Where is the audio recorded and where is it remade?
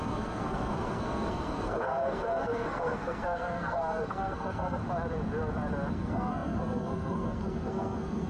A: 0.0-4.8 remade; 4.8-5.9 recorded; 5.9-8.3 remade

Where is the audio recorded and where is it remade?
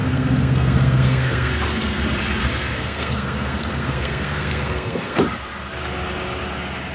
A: 0.0-1.5 remade; 1.5-2.4 recorded; 2.4-5.2 remade; 5.2-6.9 recorded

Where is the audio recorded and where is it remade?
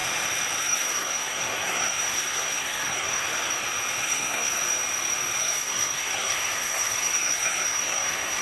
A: 0.0-0.6 recorded; 0.6-3.3 remade; 3.3-4.0 recorded; 4.0-4.5 remade; 4.5-5.4 recorded; 5.4-8.4 remade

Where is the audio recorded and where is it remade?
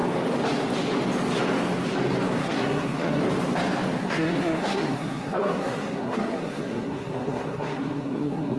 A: 0.0-2.4 recorded; 2.4-3.2 remade; 3.2-4.0 recorded; 4.0-8.6 remade